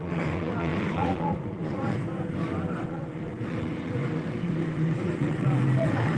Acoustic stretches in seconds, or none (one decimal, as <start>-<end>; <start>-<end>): 2.0-2.7